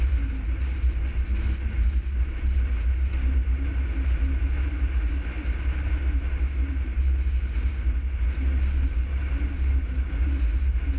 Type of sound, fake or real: real